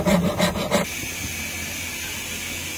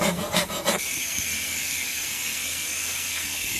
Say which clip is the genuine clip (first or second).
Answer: first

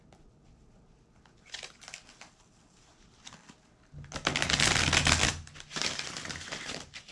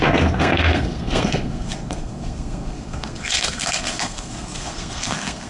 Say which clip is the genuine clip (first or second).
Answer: first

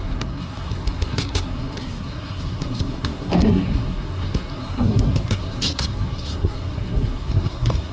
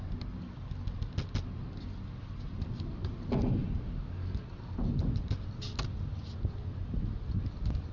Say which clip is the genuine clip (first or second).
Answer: second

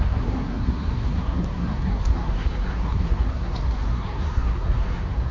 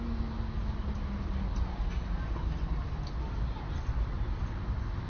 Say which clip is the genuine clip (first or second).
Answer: second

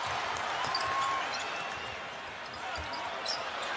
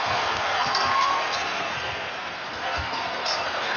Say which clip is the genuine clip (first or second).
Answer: first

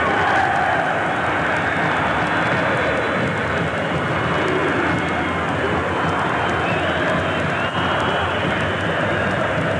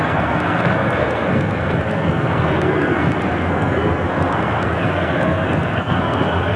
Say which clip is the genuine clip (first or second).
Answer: first